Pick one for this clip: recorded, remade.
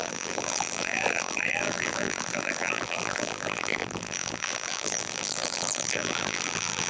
remade